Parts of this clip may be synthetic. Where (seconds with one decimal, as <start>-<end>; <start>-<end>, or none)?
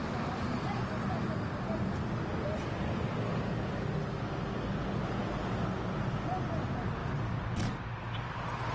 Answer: none